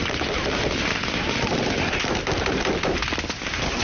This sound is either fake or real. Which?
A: real